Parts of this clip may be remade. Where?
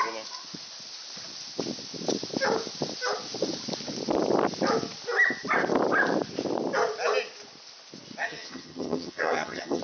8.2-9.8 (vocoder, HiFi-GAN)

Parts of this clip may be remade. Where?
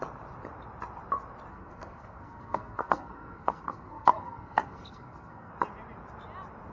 1.5-5.5 (codec, SNAC)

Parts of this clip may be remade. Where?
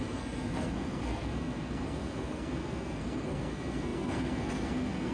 0.0-5.1 (codec, SNAC)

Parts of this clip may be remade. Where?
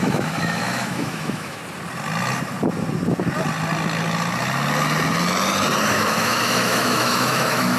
0.0-1.6 (autoencoder, DAC-VAE); 5.9-7.8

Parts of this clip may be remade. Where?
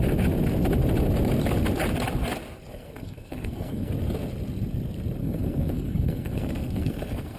2.7-3.9 (codec, SNAC); 5.2-7.4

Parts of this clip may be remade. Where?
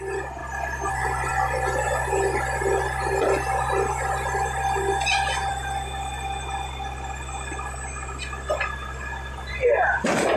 none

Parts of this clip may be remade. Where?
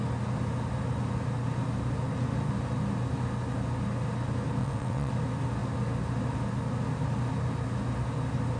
4.6-5.1 (vocoder, WaveNeXt)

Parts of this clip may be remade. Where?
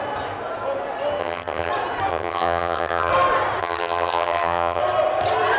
1.2-1.7 (vocoder, HiFi-GAN); 2.1-3.1; 3.6-4.8